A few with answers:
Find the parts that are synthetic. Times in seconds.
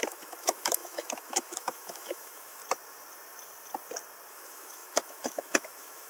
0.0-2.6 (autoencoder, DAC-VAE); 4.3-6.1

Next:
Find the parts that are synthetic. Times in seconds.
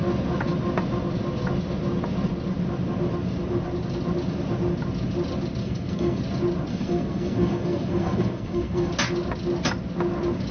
5.6-6.2 (codec, SNAC); 6.7-8.9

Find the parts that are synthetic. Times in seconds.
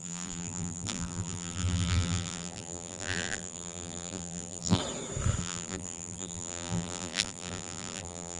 0.0-4.8 (vocoder, BigVGAN v2); 5.4-8.4